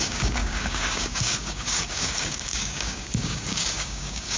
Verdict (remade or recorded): remade